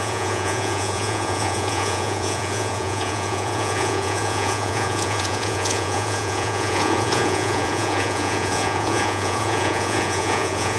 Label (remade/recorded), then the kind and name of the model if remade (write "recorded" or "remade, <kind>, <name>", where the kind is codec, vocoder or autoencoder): remade, vocoder, Vocos